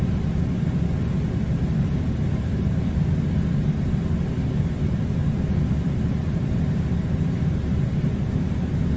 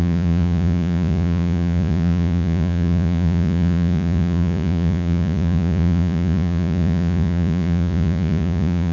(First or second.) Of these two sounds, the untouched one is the first